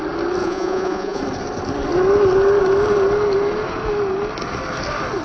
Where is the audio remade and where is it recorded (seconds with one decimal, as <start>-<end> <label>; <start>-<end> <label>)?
0.0-0.4 recorded; 0.4-1.2 remade; 1.2-5.2 recorded